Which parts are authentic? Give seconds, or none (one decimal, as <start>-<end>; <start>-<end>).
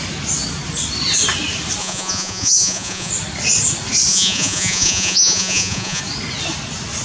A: 0.0-1.8; 3.1-4.1; 6.0-7.0